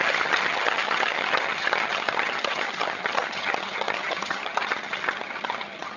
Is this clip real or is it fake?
fake